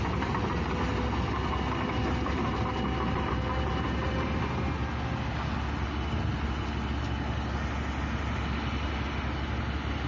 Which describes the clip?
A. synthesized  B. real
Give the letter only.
B